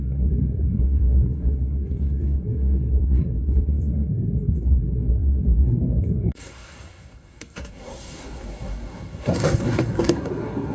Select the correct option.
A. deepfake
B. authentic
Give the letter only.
A